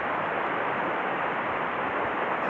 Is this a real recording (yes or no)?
yes